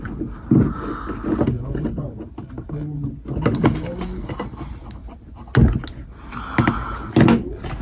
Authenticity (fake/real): real